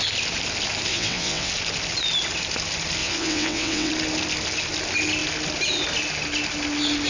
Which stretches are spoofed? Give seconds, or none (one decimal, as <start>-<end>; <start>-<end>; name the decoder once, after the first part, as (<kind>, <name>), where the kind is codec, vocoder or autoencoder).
0.9-1.5 (vocoder, WaveNeXt); 3.0-3.9